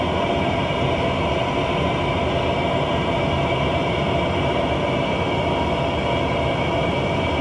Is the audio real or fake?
real